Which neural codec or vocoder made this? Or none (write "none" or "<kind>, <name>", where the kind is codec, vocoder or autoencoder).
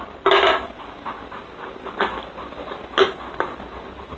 none